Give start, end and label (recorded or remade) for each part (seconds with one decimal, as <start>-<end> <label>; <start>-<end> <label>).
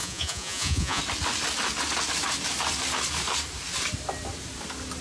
0.0-1.0 remade; 1.0-5.0 recorded